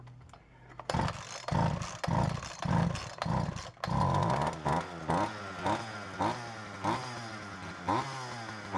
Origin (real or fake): real